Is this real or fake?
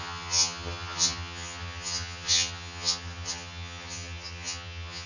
fake